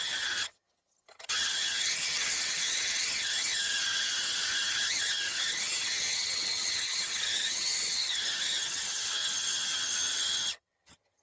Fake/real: fake